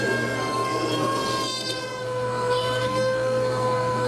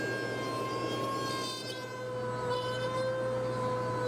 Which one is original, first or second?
second